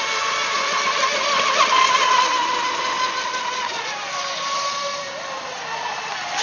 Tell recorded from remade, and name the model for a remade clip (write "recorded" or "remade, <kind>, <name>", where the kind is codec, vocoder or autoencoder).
recorded